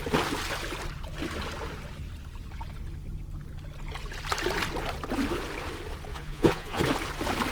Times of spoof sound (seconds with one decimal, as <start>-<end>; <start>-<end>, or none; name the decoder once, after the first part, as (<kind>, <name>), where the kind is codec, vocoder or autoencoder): 6.1-6.8 (vocoder, Vocos)